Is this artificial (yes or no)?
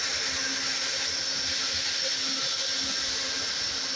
no